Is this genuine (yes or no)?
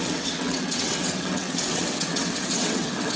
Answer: no